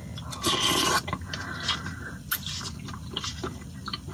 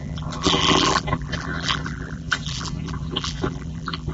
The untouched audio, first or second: first